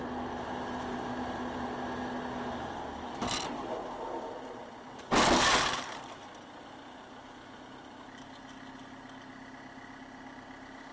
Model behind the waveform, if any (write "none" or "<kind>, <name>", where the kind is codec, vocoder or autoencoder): none